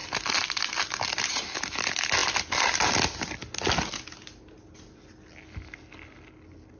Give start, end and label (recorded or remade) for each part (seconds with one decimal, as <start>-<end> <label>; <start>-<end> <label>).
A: 0.0-6.8 recorded